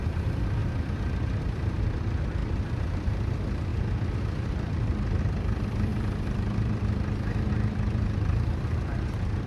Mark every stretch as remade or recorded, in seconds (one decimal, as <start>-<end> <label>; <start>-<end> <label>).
0.0-0.6 remade; 0.6-1.4 recorded; 1.4-3.7 remade; 3.7-5.2 recorded; 5.2-9.5 remade